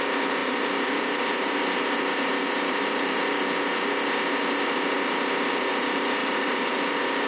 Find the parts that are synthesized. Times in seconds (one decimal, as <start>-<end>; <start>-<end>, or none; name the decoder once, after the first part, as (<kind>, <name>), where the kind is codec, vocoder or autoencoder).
0.4-1.6 (vocoder, BigVGAN v2); 6.2-6.8